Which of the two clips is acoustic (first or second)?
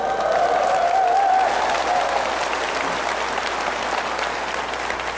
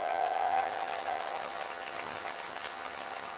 first